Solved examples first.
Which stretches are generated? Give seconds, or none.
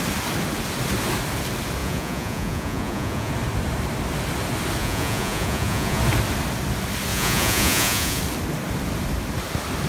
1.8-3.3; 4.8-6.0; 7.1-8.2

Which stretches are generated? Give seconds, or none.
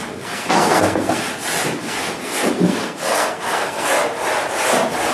0.0-1.3; 1.8-3.9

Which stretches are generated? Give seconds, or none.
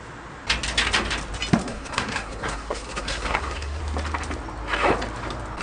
1.6-3.8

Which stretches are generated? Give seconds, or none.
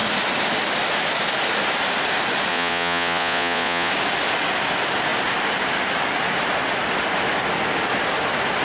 2.5-3.9